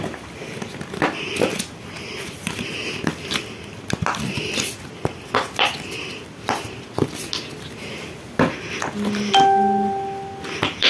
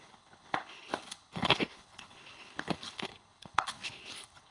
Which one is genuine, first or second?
first